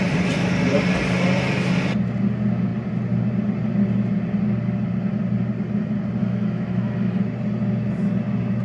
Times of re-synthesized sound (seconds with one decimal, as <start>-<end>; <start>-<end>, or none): 6.2-7.2